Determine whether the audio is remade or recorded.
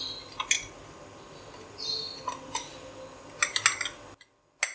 recorded